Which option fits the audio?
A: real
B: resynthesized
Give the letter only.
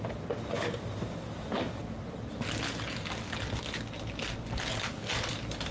A